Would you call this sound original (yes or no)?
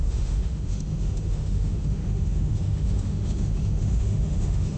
no